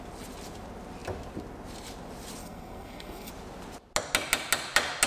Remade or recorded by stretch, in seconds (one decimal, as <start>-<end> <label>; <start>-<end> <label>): 0.0-2.4 recorded; 2.4-3.3 remade; 3.3-5.1 recorded